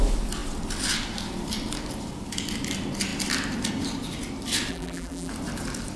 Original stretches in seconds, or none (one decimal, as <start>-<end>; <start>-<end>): 0.0-4.7; 5.3-6.0